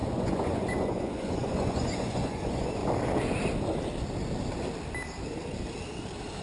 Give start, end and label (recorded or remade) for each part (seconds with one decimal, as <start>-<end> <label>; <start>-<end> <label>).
0.0-2.8 remade; 2.8-6.4 recorded

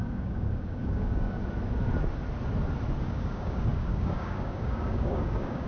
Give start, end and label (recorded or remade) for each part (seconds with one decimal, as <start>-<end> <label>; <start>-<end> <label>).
0.0-1.4 remade; 1.4-3.0 recorded; 3.0-5.7 remade

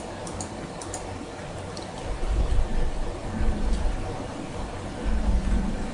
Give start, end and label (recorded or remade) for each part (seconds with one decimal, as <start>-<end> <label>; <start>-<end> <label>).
0.0-5.9 remade